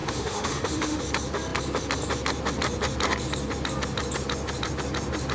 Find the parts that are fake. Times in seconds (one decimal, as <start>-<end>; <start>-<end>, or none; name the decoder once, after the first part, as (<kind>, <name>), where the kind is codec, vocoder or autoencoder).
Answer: 0.0-1.0 (autoencoder, DAC-VAE)